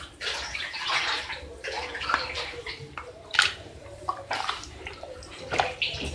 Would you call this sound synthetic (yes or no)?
yes